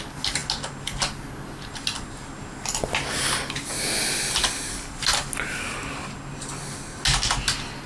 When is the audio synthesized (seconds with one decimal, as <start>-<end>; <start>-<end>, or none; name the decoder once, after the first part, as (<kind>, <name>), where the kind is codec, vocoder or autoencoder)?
none